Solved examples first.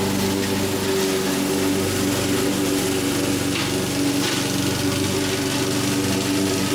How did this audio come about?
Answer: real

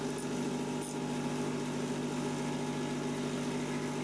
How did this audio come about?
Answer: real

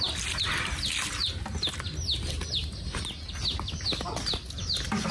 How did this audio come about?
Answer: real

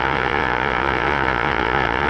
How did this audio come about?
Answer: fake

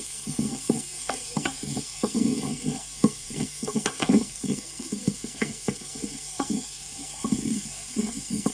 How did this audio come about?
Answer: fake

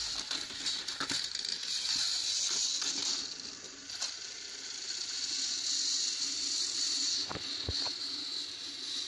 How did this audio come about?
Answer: real